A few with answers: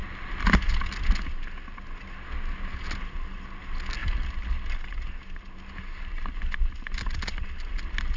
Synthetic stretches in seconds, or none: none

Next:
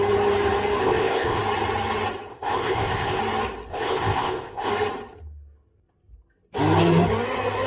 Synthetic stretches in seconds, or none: 0.8-1.4 (codec, ZipCodec); 2.3-3.2; 3.7-4.7

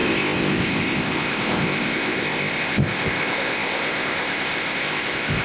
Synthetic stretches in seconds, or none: 0.0-5.4 (codec, ZipCodec)